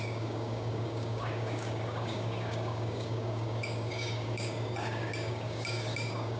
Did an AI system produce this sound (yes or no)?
yes